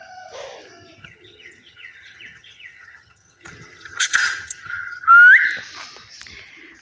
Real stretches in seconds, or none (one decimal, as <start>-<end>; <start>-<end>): 0.0-1.0; 5.1-6.8